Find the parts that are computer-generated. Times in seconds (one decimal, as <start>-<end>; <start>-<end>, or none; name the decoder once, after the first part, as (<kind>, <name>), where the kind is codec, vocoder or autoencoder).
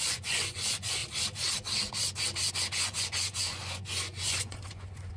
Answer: 0.0-1.0 (vocoder, Vocos); 2.5-5.2